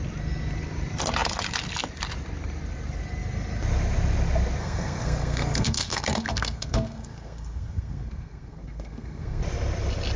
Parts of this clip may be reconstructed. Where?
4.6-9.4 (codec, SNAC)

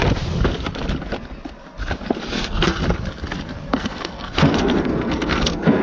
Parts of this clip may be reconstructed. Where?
2.3-2.8 (codec, SNAC); 3.7-5.8